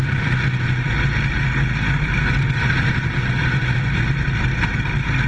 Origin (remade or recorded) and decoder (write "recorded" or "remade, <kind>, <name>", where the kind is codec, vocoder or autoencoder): recorded